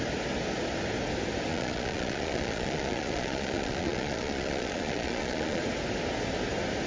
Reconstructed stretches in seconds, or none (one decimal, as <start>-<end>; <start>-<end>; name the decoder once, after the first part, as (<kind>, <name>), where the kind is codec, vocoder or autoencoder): 1.5-5.6 (vocoder, Vocos)